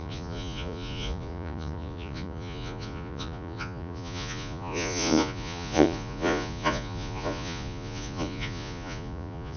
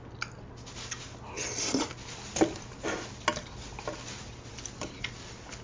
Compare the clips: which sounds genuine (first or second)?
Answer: second